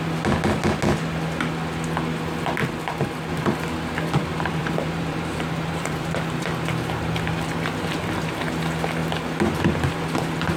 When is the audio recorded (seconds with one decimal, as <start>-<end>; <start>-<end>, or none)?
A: 0.0-4.6; 6.5-10.6